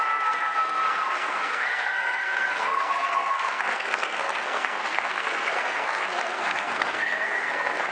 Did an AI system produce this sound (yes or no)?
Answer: yes